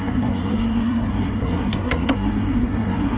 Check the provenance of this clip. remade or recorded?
remade